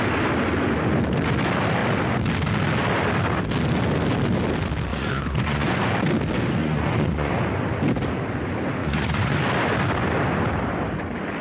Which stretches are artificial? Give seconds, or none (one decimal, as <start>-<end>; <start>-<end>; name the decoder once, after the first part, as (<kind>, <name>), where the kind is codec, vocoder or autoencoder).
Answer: 4.9-5.9 (vocoder, Vocos); 6.6-7.3; 8.8-9.4